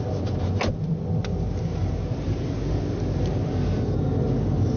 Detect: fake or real real